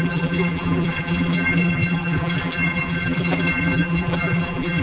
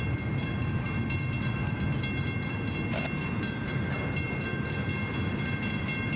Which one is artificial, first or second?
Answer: first